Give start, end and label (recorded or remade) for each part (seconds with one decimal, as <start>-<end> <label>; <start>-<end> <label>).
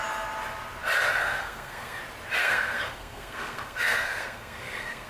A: 0.0-1.2 recorded; 1.2-2.0 remade; 2.0-2.4 recorded; 2.4-5.1 remade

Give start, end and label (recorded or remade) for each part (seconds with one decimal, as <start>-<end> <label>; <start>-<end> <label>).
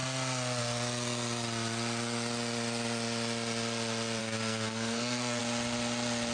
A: 0.0-4.2 recorded; 4.2-5.4 remade; 5.4-6.3 recorded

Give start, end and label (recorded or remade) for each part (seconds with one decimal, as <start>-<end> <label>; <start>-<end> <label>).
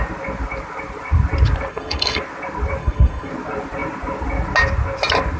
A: 0.0-1.7 recorded; 1.7-2.2 remade; 2.2-2.8 recorded; 2.8-3.3 remade; 3.3-5.4 recorded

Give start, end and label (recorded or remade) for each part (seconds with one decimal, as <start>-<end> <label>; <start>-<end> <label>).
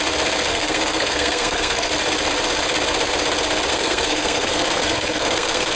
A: 0.0-0.5 recorded; 0.5-1.9 remade; 1.9-3.7 recorded; 3.7-5.8 remade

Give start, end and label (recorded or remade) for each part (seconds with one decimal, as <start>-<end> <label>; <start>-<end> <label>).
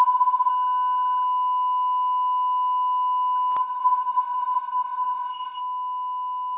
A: 0.0-0.5 remade; 0.5-3.6 recorded; 3.6-5.6 remade; 5.6-6.6 recorded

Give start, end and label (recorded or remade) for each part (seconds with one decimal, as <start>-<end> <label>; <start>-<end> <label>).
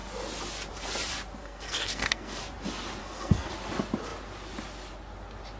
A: 0.0-1.4 recorded; 1.4-2.4 remade; 2.4-3.0 recorded; 3.0-3.5 remade; 3.5-5.6 recorded